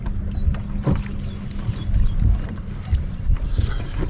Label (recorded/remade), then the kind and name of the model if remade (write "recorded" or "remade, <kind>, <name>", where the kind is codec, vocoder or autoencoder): recorded